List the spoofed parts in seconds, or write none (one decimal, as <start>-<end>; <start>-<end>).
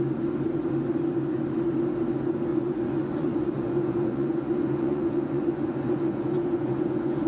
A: 2.5-7.3